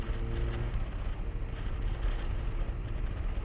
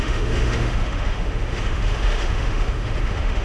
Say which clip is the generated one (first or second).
second